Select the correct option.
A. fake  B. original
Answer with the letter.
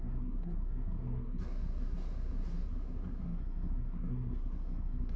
A